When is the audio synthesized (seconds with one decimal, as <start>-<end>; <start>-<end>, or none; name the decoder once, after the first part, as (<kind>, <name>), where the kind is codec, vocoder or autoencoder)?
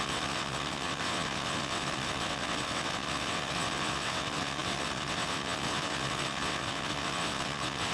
0.0-7.9 (vocoder, WaveNeXt)